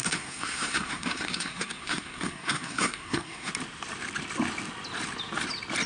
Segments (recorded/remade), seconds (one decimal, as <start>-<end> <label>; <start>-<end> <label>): 0.0-3.5 remade; 3.5-5.9 recorded